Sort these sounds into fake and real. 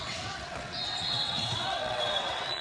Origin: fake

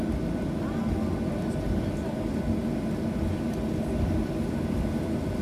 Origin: real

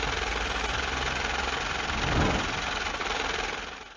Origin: real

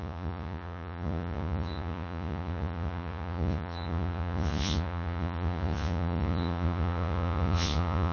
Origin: fake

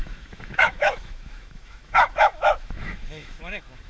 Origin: fake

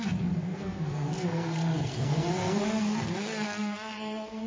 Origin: fake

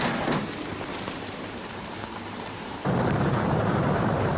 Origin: fake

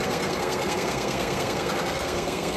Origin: fake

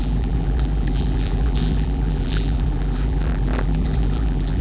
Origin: fake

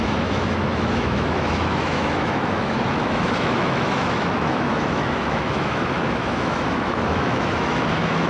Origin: fake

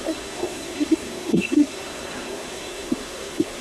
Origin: fake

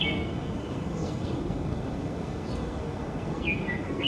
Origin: fake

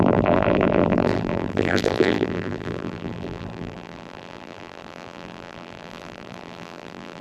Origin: fake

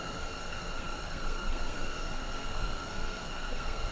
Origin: fake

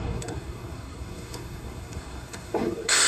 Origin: fake